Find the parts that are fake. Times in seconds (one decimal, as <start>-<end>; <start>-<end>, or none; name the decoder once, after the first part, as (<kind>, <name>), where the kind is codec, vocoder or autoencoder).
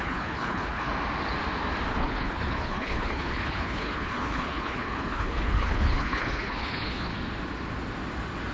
0.0-0.9 (codec, HILCodec); 1.9-7.1